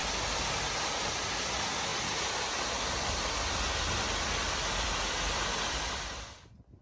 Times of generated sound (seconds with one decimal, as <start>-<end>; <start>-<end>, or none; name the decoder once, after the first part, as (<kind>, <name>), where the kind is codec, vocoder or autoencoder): none